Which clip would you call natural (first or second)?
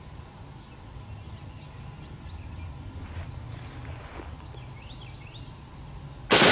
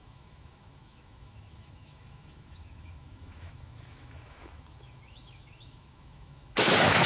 first